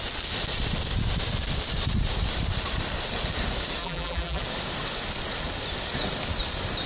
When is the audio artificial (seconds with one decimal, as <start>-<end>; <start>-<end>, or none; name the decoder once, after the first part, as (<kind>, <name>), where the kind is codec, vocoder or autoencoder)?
3.8-4.4 (vocoder, BigVGAN v2)